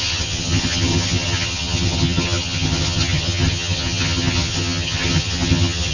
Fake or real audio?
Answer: fake